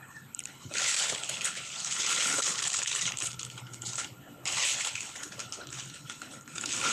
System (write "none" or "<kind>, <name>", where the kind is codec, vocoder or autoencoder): codec, HILCodec